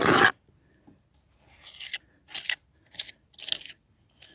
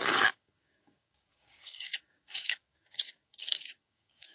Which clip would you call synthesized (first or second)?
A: second